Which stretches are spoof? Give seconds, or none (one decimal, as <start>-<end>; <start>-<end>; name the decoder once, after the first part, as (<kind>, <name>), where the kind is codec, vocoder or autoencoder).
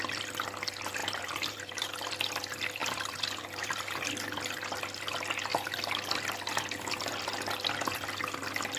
1.0-1.9 (vocoder, BigVGAN v2); 2.8-4.1